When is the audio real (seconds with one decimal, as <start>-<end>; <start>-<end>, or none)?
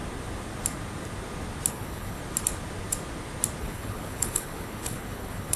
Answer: 0.0-1.7; 2.2-3.6